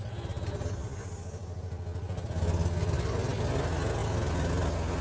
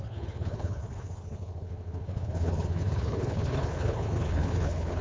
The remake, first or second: second